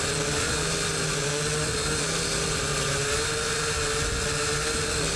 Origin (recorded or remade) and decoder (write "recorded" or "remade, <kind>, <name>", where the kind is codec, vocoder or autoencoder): recorded